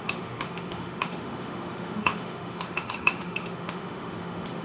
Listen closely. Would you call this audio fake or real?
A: fake